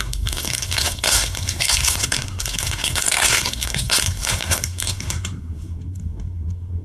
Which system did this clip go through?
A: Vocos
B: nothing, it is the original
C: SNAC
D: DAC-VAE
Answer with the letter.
C